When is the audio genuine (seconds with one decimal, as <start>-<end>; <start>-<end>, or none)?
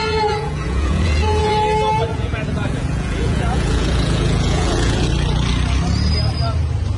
1.5-2.1; 5.1-7.0